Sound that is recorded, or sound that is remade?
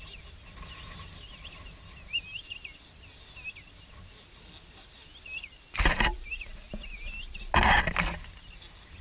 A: recorded